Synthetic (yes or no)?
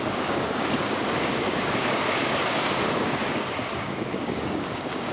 yes